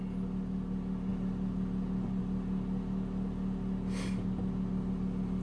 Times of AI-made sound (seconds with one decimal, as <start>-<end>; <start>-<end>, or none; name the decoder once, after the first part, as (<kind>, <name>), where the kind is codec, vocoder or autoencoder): none